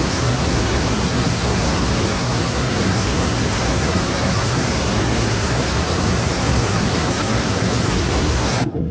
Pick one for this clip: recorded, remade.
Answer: remade